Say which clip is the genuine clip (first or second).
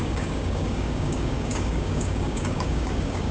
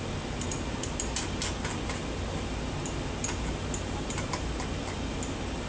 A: second